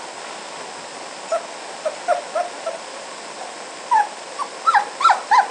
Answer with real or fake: real